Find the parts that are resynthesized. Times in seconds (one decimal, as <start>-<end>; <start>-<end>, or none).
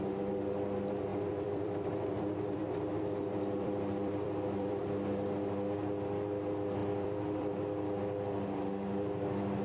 1.1-4.8; 6.8-7.6